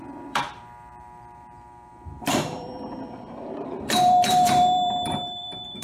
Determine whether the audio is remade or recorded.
remade